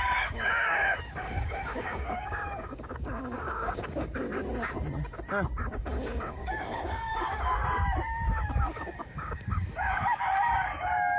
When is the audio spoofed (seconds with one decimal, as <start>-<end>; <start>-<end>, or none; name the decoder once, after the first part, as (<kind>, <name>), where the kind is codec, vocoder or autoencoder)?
0.0-4.3 (codec, DAC); 5.8-7.6; 8.4-11.2